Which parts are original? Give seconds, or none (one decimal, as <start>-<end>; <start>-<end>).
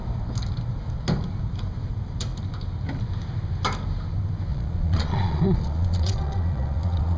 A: 0.0-4.5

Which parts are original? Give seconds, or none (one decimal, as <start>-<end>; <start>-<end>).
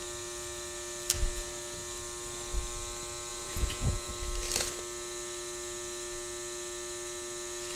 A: 0.0-3.3; 4.1-7.8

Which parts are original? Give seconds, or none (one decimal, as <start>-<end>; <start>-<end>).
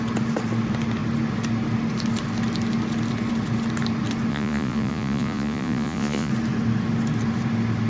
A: 0.0-4.3; 6.3-7.9